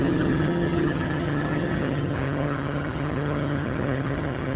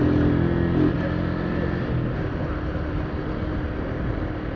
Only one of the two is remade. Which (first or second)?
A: first